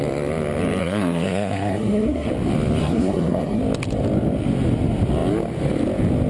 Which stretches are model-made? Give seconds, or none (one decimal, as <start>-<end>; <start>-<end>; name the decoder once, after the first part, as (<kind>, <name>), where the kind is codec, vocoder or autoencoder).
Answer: 0.8-2.3 (codec, SNAC); 2.8-3.6